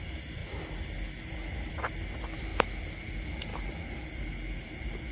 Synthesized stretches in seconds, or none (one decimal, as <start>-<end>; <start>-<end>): 0.4-1.7; 2.5-3.1; 3.5-4.1